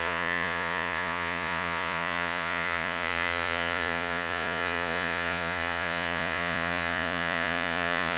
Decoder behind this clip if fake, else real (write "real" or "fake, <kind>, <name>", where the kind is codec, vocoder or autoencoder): fake, vocoder, Vocos